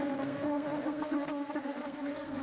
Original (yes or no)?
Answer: no